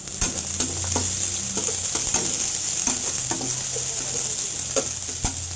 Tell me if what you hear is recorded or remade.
recorded